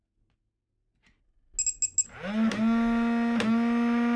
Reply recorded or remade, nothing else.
recorded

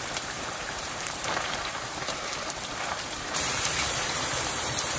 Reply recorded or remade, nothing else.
remade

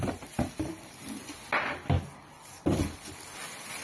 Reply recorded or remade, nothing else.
recorded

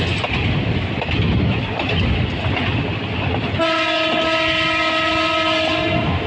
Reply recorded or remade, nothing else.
recorded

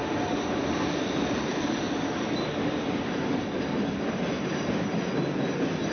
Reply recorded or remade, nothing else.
recorded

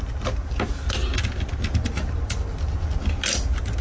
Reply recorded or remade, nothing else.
recorded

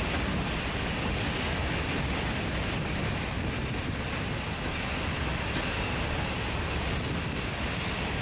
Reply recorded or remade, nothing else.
recorded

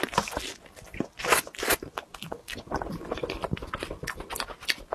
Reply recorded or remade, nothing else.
recorded